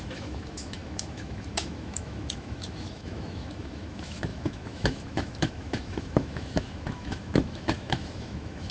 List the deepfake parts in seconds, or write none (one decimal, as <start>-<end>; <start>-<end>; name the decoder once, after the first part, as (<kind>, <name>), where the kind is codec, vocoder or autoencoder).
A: 0.0-8.7 (autoencoder, DAC-VAE)